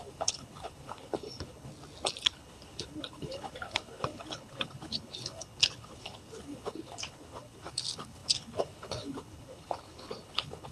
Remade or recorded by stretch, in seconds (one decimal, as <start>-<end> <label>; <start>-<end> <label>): 0.0-1.7 remade; 1.7-2.3 recorded; 2.3-10.7 remade